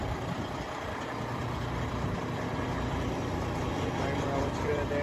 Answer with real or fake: fake